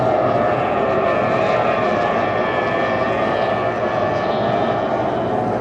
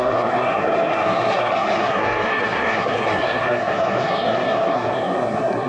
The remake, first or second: second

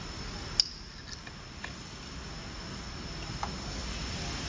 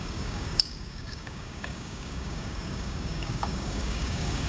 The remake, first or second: second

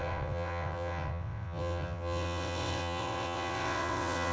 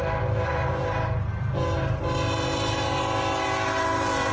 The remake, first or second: first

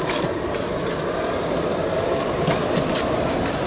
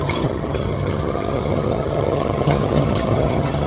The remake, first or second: second